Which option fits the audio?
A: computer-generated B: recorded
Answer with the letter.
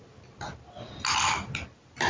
B